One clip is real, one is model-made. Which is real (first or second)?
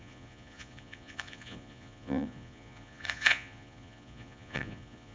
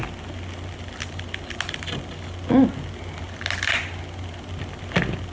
second